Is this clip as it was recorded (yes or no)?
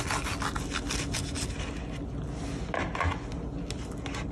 yes